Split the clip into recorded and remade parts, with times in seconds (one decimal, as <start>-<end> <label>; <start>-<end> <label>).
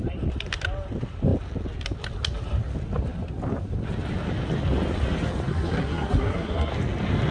0.0-5.5 recorded; 5.5-6.7 remade; 6.7-7.3 recorded